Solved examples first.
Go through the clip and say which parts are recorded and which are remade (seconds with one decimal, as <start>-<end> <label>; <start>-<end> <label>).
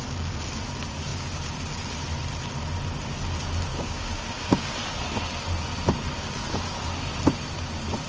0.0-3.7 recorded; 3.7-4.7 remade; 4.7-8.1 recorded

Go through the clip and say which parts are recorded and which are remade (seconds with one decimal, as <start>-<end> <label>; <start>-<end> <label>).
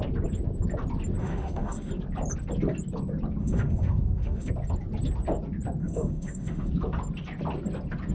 0.0-1.2 recorded; 1.2-1.9 remade; 1.9-3.4 recorded; 3.4-4.5 remade; 4.5-5.8 recorded; 5.8-6.7 remade; 6.7-8.1 recorded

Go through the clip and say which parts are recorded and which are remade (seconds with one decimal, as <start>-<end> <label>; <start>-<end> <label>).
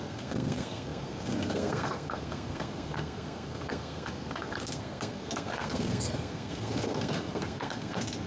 0.0-8.3 remade